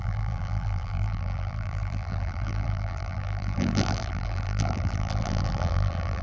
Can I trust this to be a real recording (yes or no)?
no